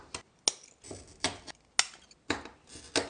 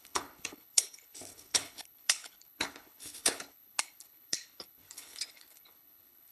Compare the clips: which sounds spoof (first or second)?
second